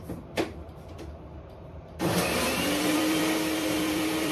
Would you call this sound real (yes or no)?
no